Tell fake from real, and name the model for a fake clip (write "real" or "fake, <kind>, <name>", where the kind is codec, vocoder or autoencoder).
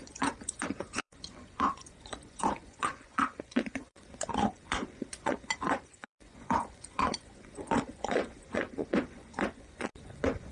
fake, vocoder, Vocos